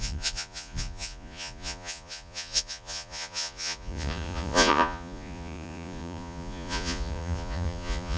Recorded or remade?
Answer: remade